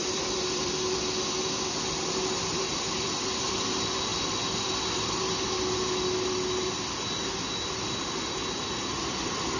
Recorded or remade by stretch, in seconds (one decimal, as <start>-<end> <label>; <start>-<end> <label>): 0.0-1.0 remade; 1.0-2.7 recorded; 2.7-3.5 remade; 3.5-9.6 recorded